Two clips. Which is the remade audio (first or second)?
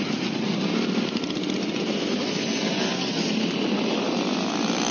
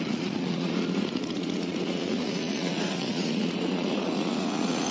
second